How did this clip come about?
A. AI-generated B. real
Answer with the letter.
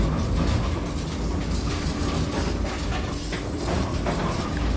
B